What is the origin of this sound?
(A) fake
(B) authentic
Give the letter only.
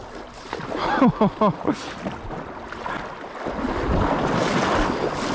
B